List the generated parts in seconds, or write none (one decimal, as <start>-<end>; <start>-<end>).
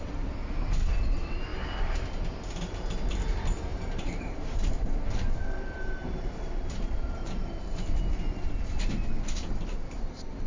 3.7-8.0